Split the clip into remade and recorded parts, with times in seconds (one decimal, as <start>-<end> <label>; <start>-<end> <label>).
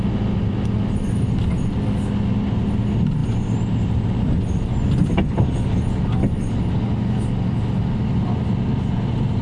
0.0-9.4 recorded